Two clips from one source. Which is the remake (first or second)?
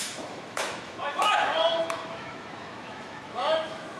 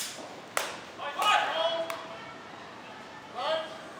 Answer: first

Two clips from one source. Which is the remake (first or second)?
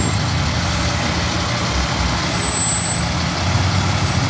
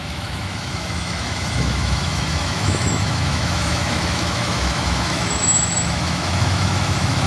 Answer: second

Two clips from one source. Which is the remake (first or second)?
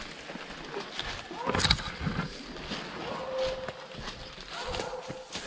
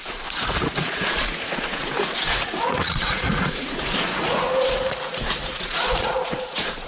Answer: second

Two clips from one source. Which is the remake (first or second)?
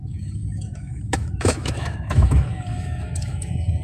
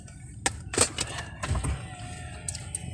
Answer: first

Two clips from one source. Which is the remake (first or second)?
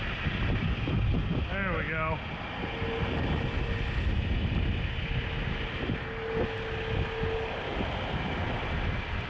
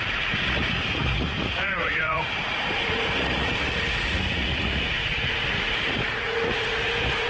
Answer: second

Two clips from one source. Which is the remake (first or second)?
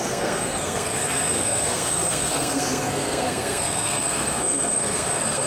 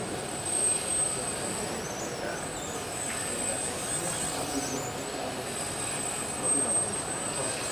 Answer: first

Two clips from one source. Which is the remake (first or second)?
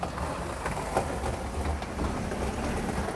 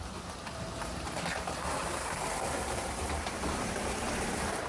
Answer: second